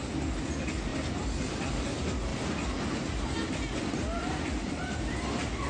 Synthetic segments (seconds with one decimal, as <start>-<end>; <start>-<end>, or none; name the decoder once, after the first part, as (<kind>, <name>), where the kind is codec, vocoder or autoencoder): none